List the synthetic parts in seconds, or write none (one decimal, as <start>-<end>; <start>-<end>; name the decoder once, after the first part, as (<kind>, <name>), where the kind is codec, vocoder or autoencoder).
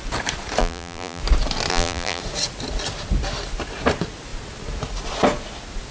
0.6-1.2 (vocoder, BigVGAN v2); 1.7-2.2